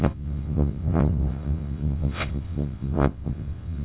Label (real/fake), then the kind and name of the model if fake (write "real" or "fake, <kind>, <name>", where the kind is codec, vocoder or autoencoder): fake, vocoder, WaveNeXt